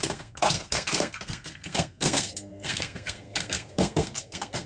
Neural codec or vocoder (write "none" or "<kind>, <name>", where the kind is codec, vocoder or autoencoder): codec, SNAC